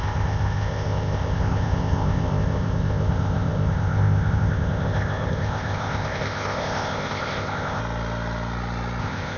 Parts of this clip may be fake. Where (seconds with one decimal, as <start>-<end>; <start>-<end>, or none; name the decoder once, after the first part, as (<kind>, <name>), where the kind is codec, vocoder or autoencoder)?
0.0-7.8 (codec, ZipCodec); 9.0-9.4